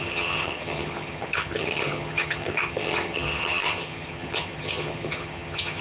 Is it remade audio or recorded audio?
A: remade